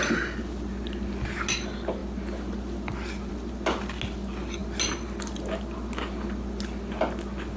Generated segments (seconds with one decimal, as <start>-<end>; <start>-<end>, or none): none